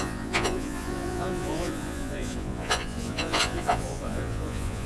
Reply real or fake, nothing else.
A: fake